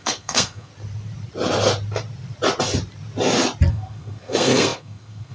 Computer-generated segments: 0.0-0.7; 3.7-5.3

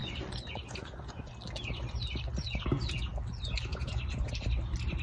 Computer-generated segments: 0.0-1.3; 3.7-4.3

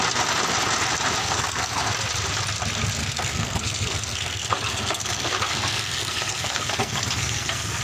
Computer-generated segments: 1.2-1.9; 3.0-7.8

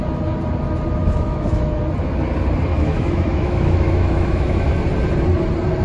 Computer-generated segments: 1.0-1.8; 2.7-4.7